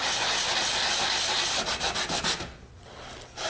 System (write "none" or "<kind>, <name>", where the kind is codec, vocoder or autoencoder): none